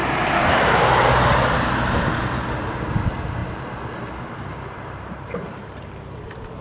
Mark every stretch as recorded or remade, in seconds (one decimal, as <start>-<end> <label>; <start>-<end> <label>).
0.0-1.1 remade; 1.1-3.4 recorded; 3.4-5.8 remade; 5.8-6.6 recorded